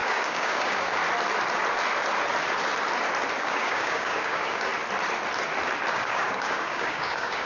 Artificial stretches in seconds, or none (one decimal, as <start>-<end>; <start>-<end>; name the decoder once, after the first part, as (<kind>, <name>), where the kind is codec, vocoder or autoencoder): 0.0-1.0 (codec, DAC); 3.4-4.7; 5.9-7.5